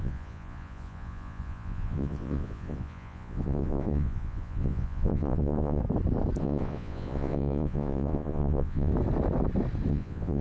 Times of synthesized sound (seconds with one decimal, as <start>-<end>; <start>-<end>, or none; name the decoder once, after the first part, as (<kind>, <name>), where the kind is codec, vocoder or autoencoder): 0.0-5.8 (vocoder, Vocos); 6.4-8.9; 9.9-10.4